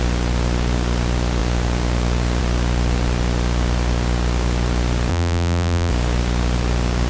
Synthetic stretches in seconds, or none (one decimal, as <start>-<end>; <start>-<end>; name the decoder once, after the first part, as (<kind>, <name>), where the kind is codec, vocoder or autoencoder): 5.1-5.9 (vocoder, BigVGAN v2)